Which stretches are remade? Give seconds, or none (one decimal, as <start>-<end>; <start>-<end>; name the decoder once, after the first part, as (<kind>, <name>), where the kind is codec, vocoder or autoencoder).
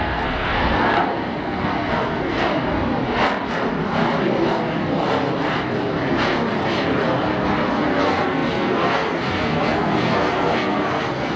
0.0-2.5 (codec, SNAC); 7.7-11.4